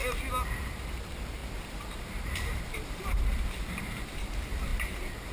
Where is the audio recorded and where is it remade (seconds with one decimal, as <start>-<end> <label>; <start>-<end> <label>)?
0.0-0.6 recorded; 0.6-5.3 remade